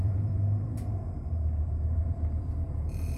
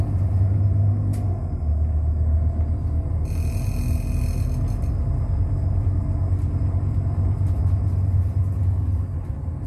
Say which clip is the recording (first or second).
second